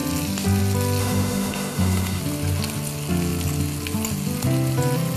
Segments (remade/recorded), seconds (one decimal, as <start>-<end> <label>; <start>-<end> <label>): 0.0-1.0 recorded; 1.0-2.2 remade; 2.2-5.2 recorded